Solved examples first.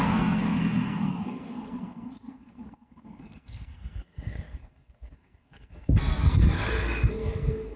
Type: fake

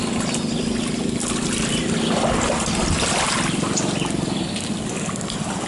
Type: real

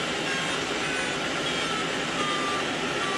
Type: real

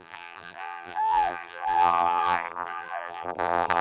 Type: fake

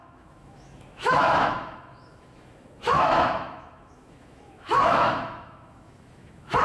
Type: fake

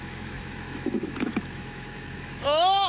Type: fake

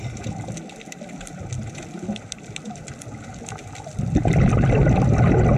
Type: real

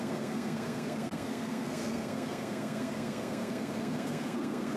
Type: fake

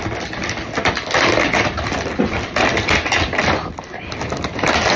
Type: real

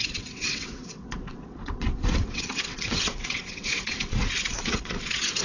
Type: fake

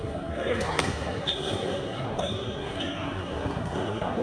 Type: fake